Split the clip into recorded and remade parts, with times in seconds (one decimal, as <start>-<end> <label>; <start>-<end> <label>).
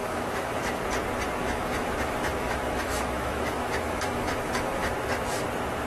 0.0-0.8 remade; 0.8-1.4 recorded; 1.4-4.9 remade; 4.9-5.9 recorded